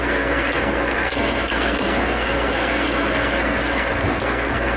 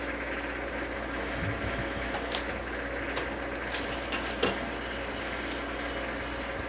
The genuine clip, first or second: second